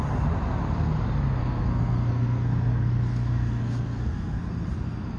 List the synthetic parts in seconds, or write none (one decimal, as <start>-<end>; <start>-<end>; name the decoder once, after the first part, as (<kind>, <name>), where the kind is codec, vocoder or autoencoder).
1.4-4.5 (codec, SNAC)